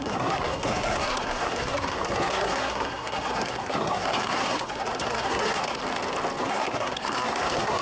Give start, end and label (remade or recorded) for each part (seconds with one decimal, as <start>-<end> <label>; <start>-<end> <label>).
0.0-5.8 remade; 5.8-6.4 recorded; 6.4-7.8 remade